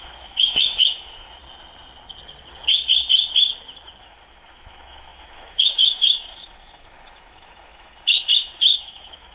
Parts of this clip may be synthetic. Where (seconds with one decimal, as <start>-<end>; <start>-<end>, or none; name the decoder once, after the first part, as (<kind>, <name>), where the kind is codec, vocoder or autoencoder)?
0.0-1.4 (autoencoder, DAC-VAE); 4.0-9.3